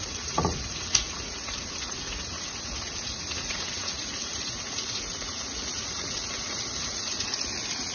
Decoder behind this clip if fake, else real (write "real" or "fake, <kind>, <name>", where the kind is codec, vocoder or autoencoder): fake, vocoder, Vocos